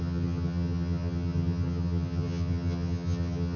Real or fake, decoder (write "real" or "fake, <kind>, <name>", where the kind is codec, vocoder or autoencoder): fake, vocoder, HiFi-GAN